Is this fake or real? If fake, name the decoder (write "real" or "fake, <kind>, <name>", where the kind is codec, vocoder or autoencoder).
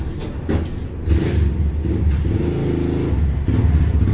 real